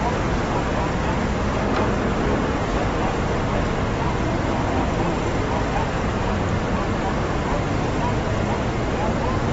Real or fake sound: real